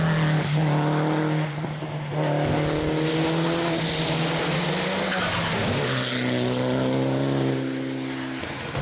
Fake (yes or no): no